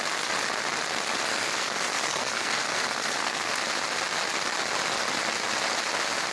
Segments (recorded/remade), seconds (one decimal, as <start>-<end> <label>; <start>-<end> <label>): 0.0-1.3 recorded; 1.3-3.5 remade; 3.5-6.3 recorded